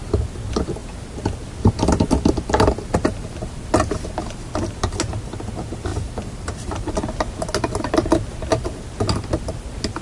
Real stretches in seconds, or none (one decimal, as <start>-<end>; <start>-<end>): 0.0-5.9; 6.9-10.0